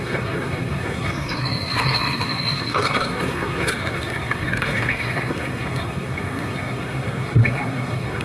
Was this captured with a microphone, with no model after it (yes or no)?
no